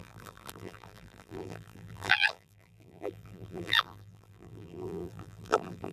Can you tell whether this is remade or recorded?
remade